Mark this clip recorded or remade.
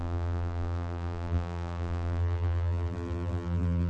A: remade